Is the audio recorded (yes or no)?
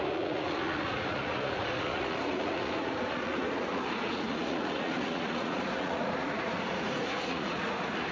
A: no